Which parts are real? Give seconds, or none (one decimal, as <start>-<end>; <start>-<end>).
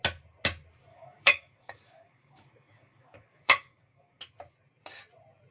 0.0-0.9; 4.2-5.5